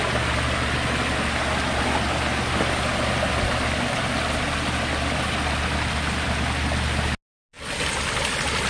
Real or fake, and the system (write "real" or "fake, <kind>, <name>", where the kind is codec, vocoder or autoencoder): real